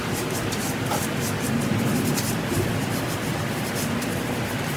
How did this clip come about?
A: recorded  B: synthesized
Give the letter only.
A